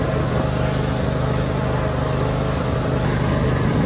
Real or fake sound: real